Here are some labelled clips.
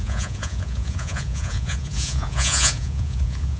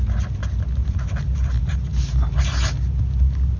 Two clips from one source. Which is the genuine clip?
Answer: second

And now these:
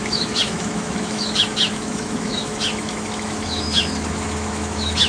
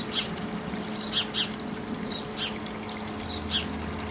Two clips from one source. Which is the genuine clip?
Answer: second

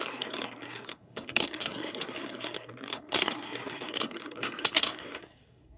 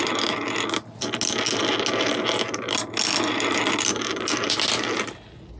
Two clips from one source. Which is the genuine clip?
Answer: second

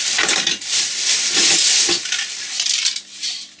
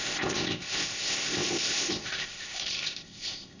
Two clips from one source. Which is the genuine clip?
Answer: first